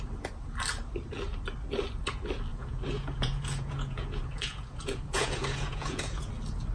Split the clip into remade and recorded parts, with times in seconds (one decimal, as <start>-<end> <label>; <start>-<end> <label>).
0.0-2.5 recorded; 2.5-6.3 remade; 6.3-6.7 recorded